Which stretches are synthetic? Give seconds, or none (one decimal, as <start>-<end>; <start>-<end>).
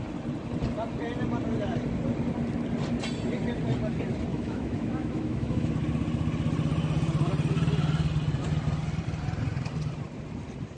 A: 4.3-5.7